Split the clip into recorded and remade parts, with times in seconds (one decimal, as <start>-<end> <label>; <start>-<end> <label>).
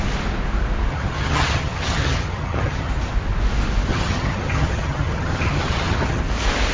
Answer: 0.0-0.9 recorded; 0.9-2.9 remade; 2.9-3.9 recorded; 3.9-6.2 remade; 6.2-6.7 recorded